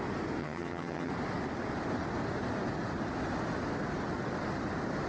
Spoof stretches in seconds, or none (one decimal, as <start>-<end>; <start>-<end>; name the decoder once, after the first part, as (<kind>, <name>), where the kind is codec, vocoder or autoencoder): 0.4-1.1 (vocoder, HiFi-GAN)